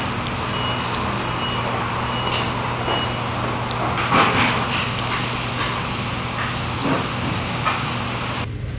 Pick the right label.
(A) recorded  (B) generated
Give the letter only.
A